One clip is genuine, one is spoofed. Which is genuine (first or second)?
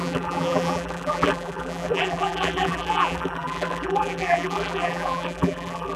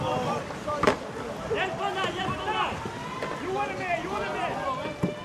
second